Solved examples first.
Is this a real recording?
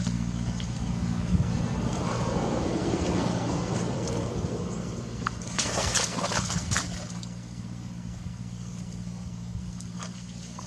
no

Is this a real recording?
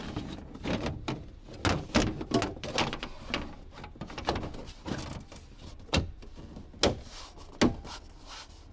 yes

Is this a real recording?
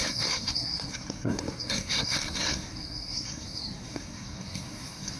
no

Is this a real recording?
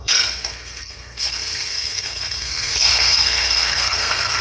no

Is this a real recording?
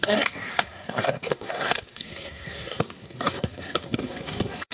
no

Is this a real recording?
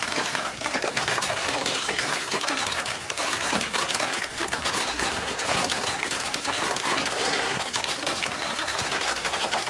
no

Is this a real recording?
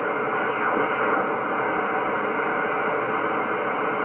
yes